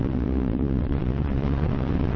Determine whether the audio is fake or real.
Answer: fake